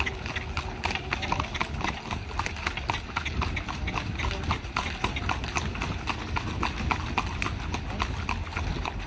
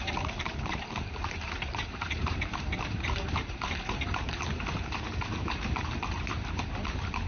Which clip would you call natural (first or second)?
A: first